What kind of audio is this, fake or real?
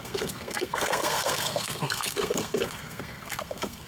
fake